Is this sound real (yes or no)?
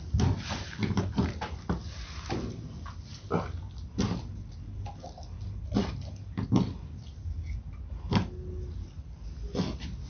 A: yes